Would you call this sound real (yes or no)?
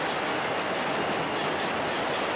yes